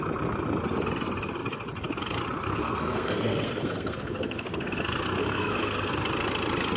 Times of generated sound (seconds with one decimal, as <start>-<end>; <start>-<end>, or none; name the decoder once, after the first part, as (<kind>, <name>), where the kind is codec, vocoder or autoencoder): 2.6-4.8 (codec, SNAC); 5.2-5.9